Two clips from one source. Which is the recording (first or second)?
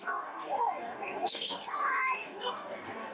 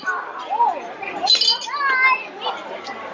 second